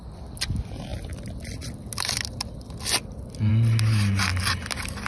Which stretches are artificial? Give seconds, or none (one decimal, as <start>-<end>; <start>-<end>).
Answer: none